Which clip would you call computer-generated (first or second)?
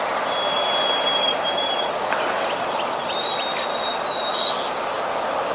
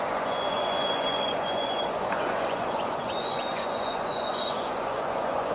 second